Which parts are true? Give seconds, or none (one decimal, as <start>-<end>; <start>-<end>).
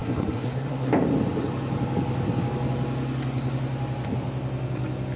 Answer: 0.9-5.2